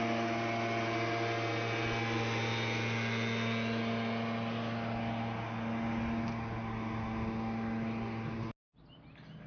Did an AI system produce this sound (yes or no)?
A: no